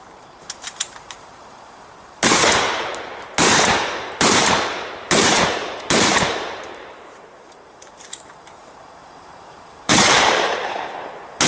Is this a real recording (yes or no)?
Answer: no